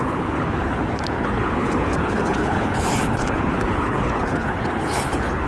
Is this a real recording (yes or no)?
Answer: no